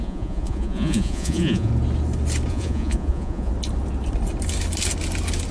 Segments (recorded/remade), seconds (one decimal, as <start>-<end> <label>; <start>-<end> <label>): 0.0-1.7 remade; 1.7-2.5 recorded; 2.5-3.5 remade; 3.5-5.5 recorded